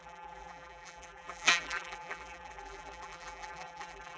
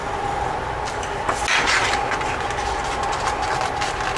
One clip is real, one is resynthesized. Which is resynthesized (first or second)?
first